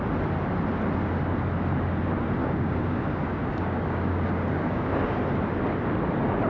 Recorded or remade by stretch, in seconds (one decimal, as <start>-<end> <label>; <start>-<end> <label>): 0.0-2.4 recorded; 2.4-5.2 remade; 5.2-6.5 recorded